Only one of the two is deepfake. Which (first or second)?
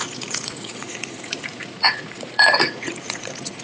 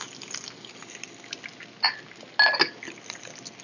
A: first